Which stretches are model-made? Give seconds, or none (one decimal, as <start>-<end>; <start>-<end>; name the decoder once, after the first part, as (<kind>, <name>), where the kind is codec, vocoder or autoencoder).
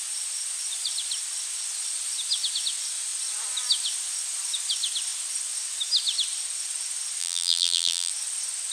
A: 7.2-8.1 (vocoder, BigVGAN v2)